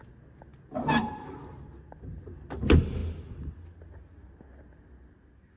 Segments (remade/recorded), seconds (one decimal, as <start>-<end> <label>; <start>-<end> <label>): 0.0-5.6 recorded